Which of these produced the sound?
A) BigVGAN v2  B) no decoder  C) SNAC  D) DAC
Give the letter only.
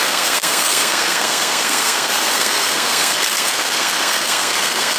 C